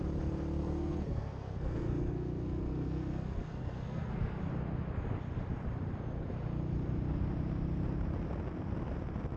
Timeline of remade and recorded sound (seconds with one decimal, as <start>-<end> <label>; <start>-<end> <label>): 0.0-0.6 recorded; 0.6-4.4 remade; 4.4-9.4 recorded